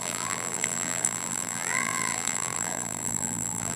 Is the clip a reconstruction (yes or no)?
yes